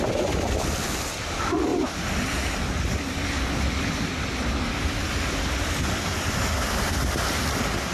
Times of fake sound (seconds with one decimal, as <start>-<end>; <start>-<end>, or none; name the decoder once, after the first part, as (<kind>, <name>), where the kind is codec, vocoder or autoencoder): none